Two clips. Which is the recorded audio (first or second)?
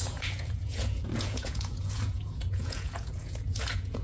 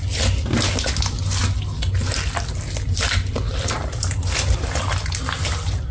second